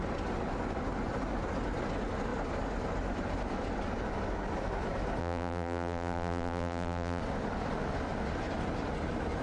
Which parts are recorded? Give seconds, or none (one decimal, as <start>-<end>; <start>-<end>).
0.0-5.2; 7.2-9.4